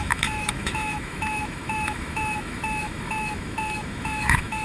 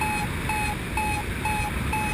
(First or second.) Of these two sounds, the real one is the second